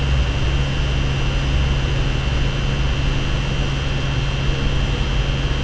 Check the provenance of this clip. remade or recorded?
recorded